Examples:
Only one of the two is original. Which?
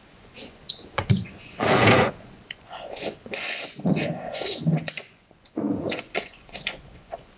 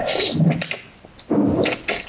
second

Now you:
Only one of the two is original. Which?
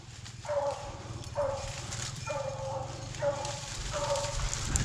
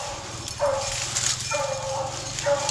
second